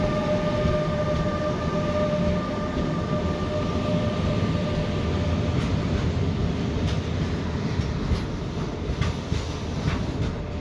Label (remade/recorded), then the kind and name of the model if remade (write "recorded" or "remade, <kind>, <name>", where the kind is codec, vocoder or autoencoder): recorded